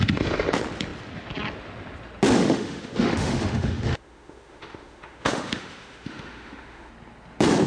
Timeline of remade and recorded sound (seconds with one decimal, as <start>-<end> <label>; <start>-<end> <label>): 0.0-2.4 recorded; 2.4-6.9 remade; 6.9-7.7 recorded